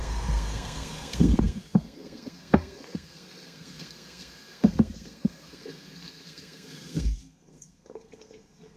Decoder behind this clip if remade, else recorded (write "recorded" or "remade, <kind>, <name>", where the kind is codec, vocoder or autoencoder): remade, codec, SNAC